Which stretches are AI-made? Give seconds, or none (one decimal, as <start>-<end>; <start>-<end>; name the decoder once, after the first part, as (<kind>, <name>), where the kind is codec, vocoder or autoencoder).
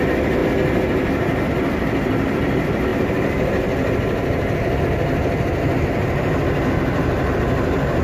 none